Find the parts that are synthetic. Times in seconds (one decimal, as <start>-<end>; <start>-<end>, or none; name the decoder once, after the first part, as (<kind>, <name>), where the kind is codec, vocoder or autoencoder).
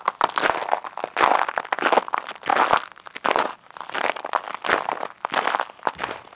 none